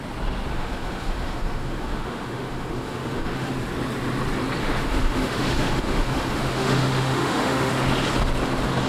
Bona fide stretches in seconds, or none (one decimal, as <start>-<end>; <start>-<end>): 0.0-0.5; 3.5-4.6; 7.7-8.9